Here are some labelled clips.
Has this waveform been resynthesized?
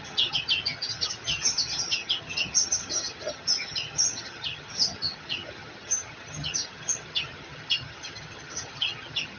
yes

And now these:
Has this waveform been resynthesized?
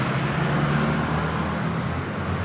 no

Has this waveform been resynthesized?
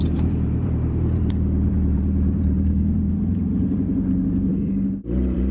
yes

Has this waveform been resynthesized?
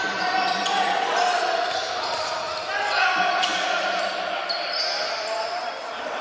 no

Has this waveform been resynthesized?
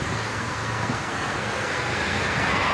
yes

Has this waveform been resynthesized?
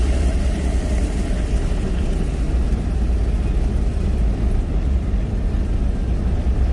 no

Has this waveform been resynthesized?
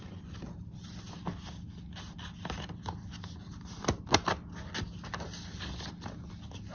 no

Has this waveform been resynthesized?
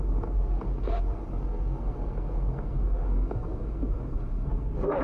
yes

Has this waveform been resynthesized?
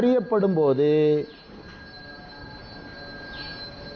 no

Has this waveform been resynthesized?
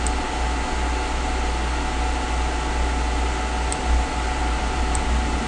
no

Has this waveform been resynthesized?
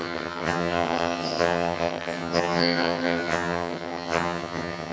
yes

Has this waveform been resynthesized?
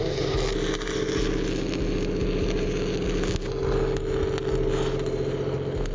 no